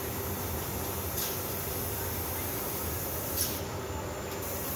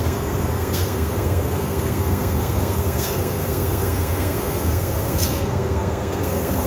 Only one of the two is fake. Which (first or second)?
second